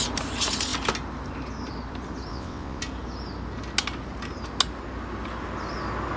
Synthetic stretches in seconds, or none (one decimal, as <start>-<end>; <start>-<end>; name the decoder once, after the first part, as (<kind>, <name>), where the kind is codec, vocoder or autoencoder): 2.3-2.8 (vocoder, WaveNeXt)